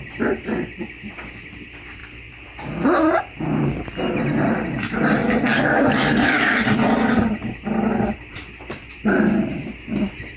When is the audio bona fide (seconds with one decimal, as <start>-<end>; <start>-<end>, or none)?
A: 2.0-3.2; 5.2-6.4; 7.4-8.3